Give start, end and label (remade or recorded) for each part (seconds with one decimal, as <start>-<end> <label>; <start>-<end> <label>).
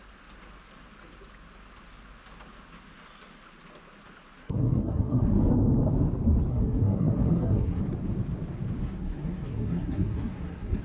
0.0-4.4 recorded; 4.4-5.4 remade; 5.4-6.5 recorded; 6.5-7.8 remade; 7.8-8.8 recorded; 8.8-10.8 remade